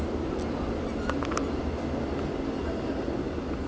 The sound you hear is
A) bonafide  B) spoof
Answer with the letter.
A